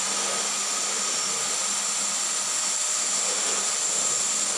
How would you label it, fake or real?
real